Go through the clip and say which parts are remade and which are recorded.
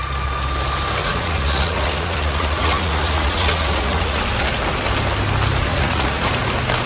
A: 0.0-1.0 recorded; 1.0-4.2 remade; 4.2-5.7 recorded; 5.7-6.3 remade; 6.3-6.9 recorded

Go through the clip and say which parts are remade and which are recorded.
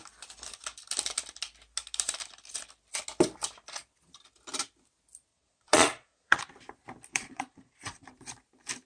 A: 0.0-5.3 recorded; 5.3-6.4 remade; 6.4-7.1 recorded; 7.1-8.1 remade; 8.1-8.9 recorded